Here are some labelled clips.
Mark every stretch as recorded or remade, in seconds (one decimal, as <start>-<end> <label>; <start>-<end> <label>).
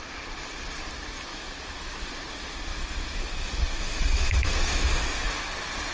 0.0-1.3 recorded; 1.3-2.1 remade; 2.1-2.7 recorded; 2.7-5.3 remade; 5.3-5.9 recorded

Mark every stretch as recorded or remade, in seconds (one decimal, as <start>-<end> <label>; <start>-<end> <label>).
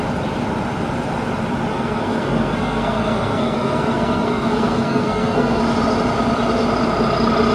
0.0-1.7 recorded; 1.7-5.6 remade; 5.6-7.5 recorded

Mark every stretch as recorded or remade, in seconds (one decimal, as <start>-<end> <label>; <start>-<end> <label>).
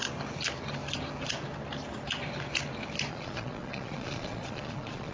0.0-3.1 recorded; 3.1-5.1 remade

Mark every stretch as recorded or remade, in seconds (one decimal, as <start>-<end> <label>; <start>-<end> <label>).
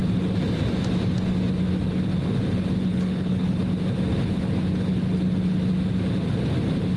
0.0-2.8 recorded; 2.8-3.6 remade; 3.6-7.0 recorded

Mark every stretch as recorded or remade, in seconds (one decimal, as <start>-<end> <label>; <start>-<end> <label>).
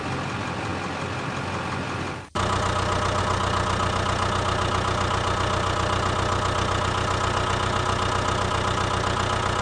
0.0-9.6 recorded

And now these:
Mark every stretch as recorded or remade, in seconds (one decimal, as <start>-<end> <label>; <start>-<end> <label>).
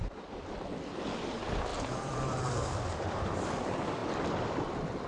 0.0-1.7 recorded; 1.7-3.5 remade; 3.5-4.0 recorded; 4.0-4.5 remade; 4.5-5.1 recorded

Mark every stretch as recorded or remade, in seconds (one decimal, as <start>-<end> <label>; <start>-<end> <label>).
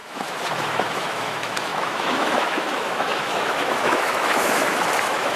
0.0-5.4 remade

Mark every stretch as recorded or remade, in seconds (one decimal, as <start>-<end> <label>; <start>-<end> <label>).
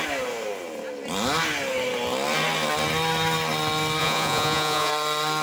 0.0-4.0 recorded; 4.0-4.9 remade; 4.9-5.4 recorded